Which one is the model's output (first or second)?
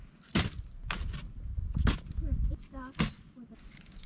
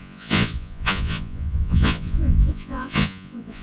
second